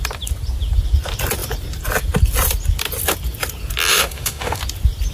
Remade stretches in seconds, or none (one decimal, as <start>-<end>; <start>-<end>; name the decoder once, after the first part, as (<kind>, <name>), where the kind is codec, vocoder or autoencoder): 3.9-4.6 (autoencoder, DAC-VAE)

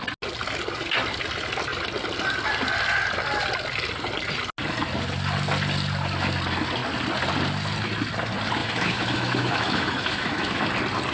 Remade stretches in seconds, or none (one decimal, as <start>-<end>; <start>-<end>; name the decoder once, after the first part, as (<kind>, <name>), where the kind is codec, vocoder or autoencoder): 8.6-10.7 (autoencoder, DAC-VAE)

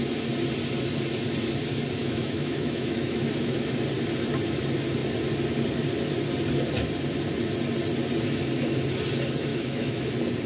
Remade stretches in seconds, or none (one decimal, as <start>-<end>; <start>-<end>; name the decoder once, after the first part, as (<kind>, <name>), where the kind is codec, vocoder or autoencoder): 2.0-3.7 (autoencoder, DAC-VAE); 9.5-10.1

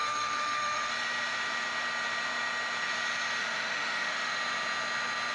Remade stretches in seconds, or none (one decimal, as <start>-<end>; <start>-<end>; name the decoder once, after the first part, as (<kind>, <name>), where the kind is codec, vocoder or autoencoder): 0.0-0.9 (autoencoder, DAC-VAE); 3.4-4.4